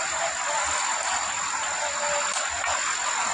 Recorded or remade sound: recorded